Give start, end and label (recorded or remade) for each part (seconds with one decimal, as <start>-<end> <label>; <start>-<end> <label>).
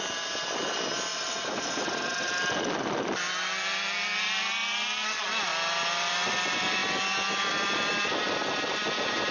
0.0-1.1 recorded; 1.1-2.3 remade; 2.3-9.3 recorded